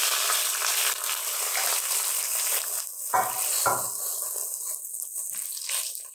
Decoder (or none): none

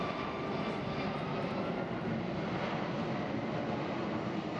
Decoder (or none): none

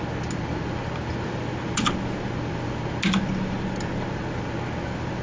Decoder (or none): none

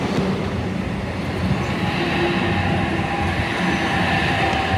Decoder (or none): none